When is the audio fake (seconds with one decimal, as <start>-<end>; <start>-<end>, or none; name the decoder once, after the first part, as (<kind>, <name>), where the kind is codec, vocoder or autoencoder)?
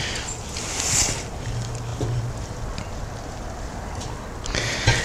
none